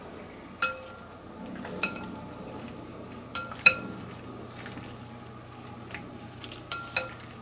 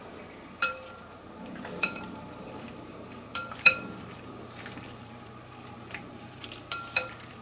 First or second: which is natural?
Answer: first